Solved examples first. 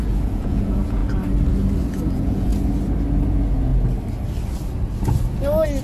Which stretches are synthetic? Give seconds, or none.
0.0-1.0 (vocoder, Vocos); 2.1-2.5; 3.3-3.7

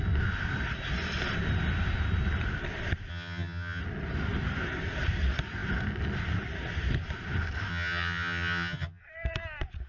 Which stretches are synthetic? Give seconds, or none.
3.1-3.8 (vocoder, HiFi-GAN); 7.7-9.0

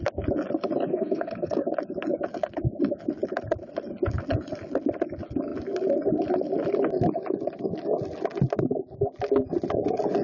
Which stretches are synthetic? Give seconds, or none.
0.9-1.7 (codec, SNAC)

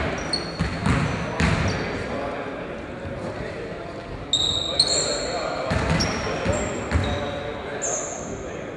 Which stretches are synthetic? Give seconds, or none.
none